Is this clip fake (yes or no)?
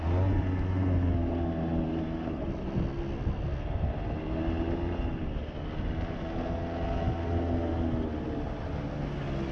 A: no